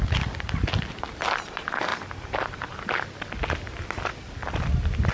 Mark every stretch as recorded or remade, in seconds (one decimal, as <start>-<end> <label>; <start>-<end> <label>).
0.0-5.1 recorded